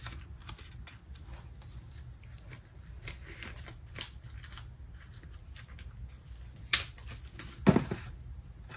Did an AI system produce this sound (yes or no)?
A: no